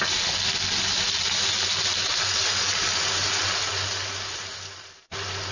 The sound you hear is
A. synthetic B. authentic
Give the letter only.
B